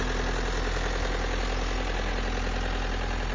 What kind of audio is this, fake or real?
real